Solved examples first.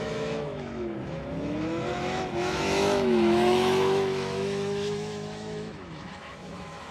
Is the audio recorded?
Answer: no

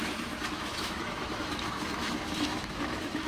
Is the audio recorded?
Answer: no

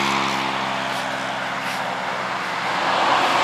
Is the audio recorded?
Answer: yes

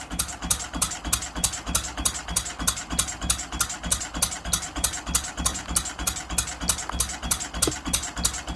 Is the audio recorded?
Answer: yes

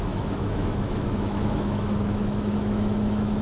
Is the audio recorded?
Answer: no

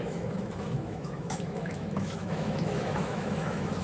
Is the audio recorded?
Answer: no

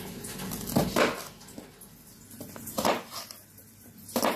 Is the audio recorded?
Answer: yes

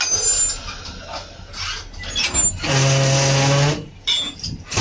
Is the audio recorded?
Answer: yes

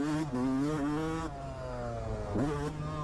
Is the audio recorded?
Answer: yes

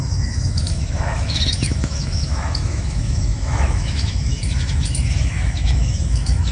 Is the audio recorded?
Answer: no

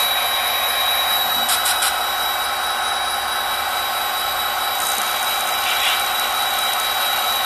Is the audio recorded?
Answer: yes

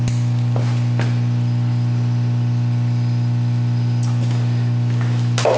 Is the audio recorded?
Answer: yes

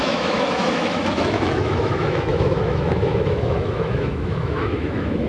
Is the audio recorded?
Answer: no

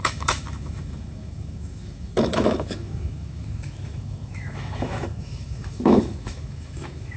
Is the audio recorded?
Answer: no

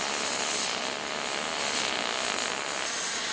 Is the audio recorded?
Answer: yes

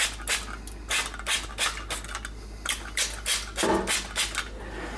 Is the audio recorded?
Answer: yes